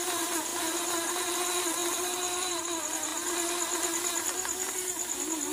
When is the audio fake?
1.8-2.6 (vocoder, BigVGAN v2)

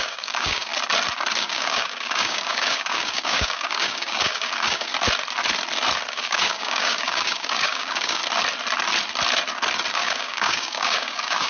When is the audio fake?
0.0-0.7 (codec, DAC); 1.4-4.9; 6.1-8.2; 9.9-11.5

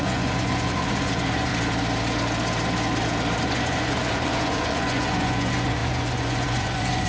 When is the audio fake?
0.0-1.5 (vocoder, Vocos); 3.4-7.1

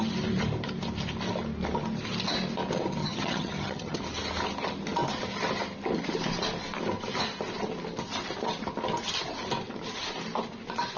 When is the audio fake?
3.0-4.0 (vocoder, HiFi-GAN)